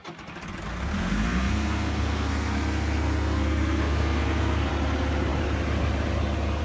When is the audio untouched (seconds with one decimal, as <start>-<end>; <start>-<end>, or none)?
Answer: 0.0-0.7; 4.7-6.6